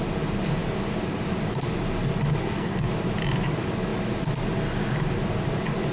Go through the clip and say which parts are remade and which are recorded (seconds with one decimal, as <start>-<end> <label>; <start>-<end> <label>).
0.0-2.4 recorded; 2.4-2.9 remade; 2.9-5.9 recorded